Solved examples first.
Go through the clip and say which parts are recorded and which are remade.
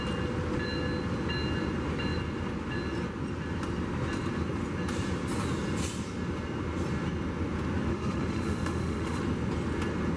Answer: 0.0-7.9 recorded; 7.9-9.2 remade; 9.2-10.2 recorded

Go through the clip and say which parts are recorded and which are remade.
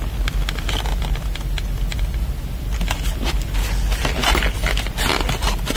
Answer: 0.0-5.8 recorded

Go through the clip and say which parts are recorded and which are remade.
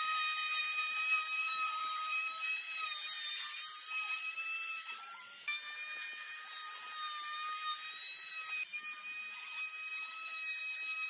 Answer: 0.0-0.6 recorded; 0.6-5.0 remade; 5.0-11.1 recorded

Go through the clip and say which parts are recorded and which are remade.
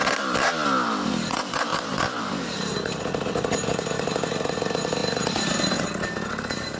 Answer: 0.0-1.7 recorded; 1.7-3.0 remade; 3.0-6.8 recorded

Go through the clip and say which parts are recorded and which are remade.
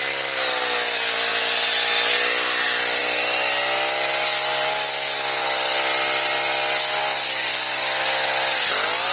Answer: 0.0-9.1 recorded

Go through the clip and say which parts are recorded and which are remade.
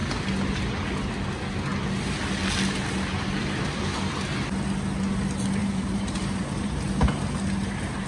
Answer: 0.0-5.6 recorded; 5.6-7.0 remade; 7.0-8.1 recorded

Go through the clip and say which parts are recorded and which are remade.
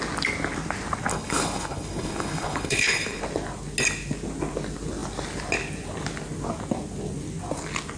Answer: 0.0-1.1 recorded; 1.1-3.2 remade; 3.2-8.0 recorded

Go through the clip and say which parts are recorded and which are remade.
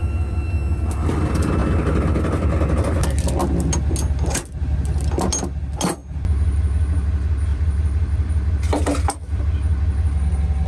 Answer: 0.0-0.5 remade; 0.5-7.5 recorded; 7.5-9.4 remade; 9.4-10.7 recorded